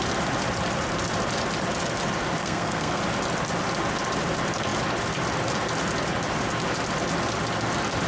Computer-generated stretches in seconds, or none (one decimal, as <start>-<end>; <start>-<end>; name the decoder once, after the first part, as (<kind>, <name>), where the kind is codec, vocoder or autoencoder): 2.4-3.0 (codec, SNAC)